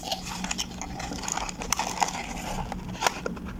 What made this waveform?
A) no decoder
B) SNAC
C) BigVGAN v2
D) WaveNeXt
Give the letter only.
A